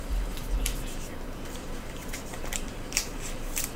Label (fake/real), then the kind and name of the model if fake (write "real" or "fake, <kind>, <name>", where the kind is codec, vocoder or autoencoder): fake, vocoder, BigVGAN v2